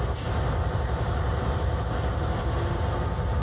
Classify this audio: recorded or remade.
recorded